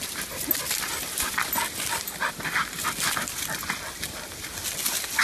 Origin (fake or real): real